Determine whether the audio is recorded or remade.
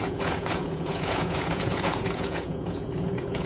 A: remade